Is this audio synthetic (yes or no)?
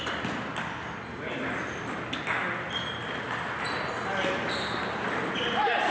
no